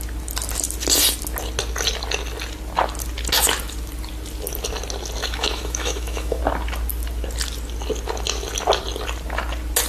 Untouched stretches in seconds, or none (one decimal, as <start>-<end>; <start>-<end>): 0.0-5.2; 6.4-9.9